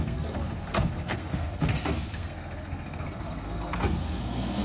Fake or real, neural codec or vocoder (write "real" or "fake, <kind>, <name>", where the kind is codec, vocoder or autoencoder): fake, codec, SNAC